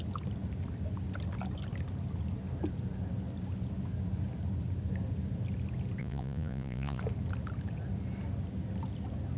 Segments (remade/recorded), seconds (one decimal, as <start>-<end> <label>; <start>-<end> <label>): 0.0-6.0 recorded; 6.0-7.0 remade; 7.0-9.4 recorded